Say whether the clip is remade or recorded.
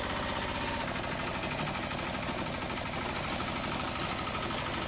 recorded